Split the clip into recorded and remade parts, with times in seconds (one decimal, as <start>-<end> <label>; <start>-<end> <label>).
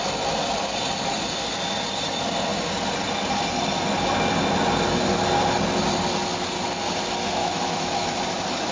0.0-7.4 recorded; 7.4-8.7 remade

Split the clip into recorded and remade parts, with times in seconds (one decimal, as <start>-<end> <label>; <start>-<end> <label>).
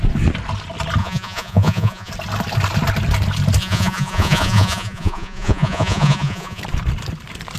0.0-1.0 recorded; 1.0-2.1 remade; 2.1-3.6 recorded; 3.6-6.6 remade; 6.6-7.6 recorded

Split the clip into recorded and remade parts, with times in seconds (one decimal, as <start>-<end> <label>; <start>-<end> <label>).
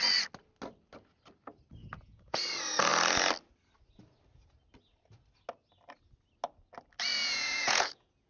0.0-1.8 recorded; 1.8-2.4 remade; 2.4-7.2 recorded; 7.2-8.3 remade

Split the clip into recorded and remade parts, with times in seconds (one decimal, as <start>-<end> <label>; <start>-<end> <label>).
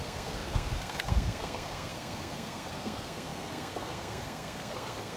0.0-5.2 remade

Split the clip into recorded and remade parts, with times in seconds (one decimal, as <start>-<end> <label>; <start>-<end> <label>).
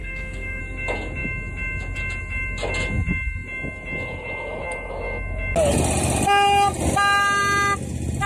0.0-0.6 remade; 0.6-8.3 recorded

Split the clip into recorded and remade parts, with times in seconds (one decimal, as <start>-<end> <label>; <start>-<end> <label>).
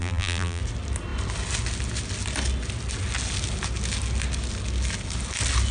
0.0-0.6 remade; 0.6-5.7 recorded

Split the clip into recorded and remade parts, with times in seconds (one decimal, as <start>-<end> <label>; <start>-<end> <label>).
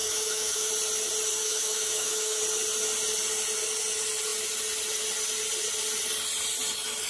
0.0-0.7 remade; 0.7-1.4 recorded; 1.4-2.4 remade; 2.4-7.1 recorded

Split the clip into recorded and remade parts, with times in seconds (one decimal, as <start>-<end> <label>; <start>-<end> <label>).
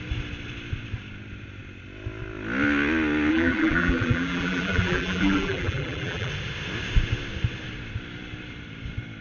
0.0-3.3 recorded; 3.3-6.3 remade; 6.3-9.2 recorded